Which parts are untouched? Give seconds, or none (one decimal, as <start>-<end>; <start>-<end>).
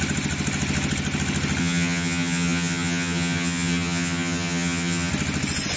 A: 0.0-1.6; 5.1-5.8